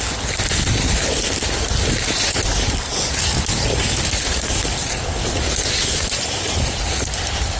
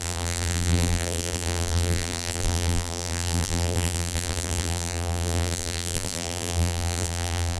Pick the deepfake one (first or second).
second